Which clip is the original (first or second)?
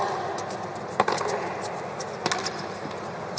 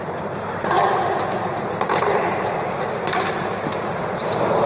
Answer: first